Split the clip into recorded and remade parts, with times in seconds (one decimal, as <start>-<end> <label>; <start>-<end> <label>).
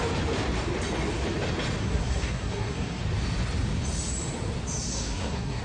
0.0-1.8 recorded; 1.8-3.0 remade; 3.0-4.9 recorded; 4.9-5.6 remade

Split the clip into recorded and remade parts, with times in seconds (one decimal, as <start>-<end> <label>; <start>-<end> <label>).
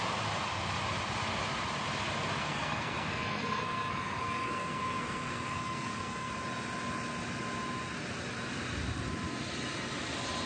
0.0-2.4 recorded; 2.4-6.3 remade; 6.3-10.5 recorded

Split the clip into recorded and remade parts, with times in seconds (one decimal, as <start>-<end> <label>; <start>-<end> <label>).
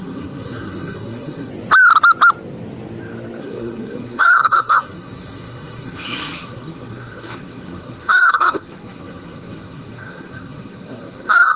0.0-1.5 remade; 1.5-3.4 recorded; 3.4-11.6 remade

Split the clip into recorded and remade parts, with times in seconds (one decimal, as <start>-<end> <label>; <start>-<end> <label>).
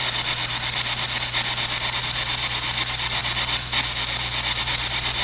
0.0-5.2 recorded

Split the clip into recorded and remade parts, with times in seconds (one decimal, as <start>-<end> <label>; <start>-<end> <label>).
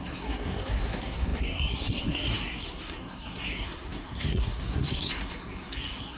0.0-6.2 remade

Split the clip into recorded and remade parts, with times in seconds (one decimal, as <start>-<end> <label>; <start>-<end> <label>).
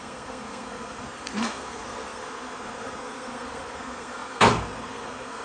0.0-5.4 remade